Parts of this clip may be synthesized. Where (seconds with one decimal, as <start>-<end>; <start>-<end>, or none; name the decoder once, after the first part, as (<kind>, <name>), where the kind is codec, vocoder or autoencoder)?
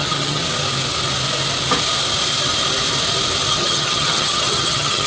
0.0-0.4 (vocoder, HiFi-GAN); 3.5-5.1